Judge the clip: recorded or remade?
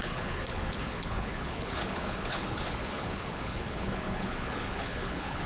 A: remade